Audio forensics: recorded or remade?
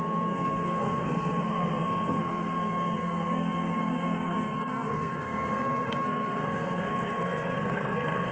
remade